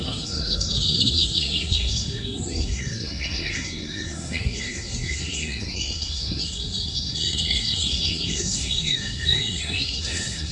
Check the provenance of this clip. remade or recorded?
remade